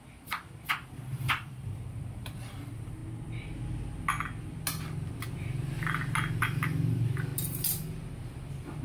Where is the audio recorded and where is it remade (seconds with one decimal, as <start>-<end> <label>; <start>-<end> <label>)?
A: 0.0-3.0 remade; 3.0-6.4 recorded; 6.4-7.3 remade; 7.3-8.2 recorded; 8.2-8.8 remade